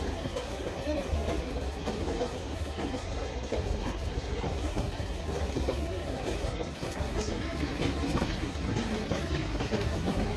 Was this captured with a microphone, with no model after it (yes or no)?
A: no